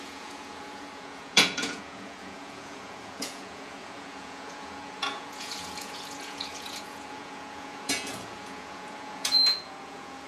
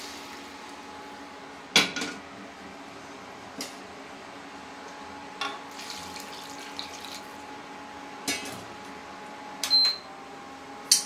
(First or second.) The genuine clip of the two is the second